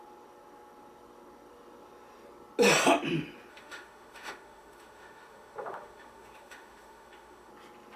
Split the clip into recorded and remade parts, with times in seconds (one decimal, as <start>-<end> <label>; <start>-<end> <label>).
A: 0.0-3.5 recorded; 3.5-7.5 remade; 7.5-8.0 recorded